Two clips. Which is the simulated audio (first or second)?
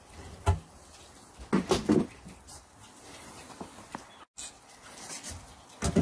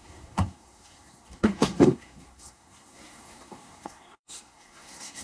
second